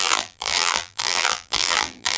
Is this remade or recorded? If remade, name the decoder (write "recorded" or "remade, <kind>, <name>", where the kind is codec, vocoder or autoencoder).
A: remade, vocoder, BigVGAN v2